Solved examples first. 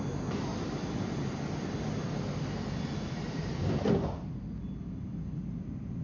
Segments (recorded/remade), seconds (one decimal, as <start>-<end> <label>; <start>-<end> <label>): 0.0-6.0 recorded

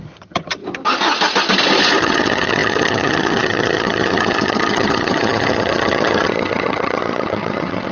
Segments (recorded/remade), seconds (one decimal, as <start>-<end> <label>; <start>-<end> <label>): 0.0-0.6 remade; 0.6-2.0 recorded; 2.0-7.9 remade

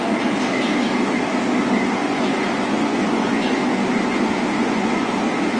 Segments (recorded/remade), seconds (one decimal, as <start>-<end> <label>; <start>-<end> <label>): 0.0-2.0 recorded; 2.0-3.6 remade; 3.6-4.6 recorded; 4.6-5.1 remade; 5.1-5.6 recorded

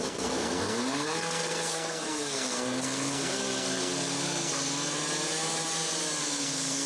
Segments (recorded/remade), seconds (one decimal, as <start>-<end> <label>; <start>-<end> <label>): 0.0-4.5 remade; 4.5-6.2 recorded; 6.2-6.9 remade